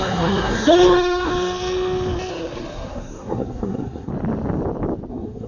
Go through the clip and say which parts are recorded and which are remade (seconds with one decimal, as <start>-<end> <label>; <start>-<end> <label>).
0.0-1.3 remade; 1.3-2.3 recorded; 2.3-4.1 remade; 4.1-5.1 recorded; 5.1-5.5 remade